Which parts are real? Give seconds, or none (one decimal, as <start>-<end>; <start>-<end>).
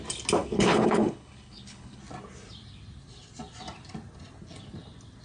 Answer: 0.0-0.4; 2.0-5.2